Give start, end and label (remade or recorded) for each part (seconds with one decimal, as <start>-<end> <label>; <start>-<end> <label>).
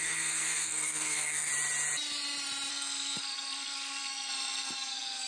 0.0-1.5 remade; 1.5-2.7 recorded; 2.7-5.3 remade